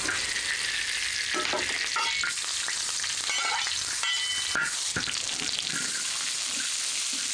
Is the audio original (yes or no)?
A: yes